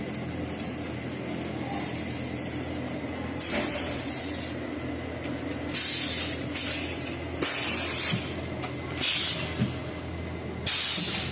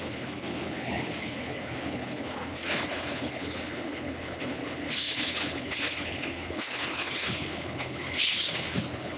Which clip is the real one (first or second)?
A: first